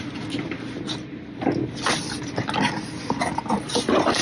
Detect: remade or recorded recorded